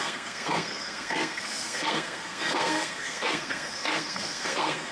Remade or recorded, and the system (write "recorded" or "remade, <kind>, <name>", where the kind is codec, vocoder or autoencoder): remade, codec, SNAC